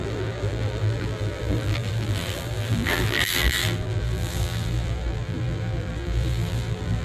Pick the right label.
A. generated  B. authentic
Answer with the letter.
A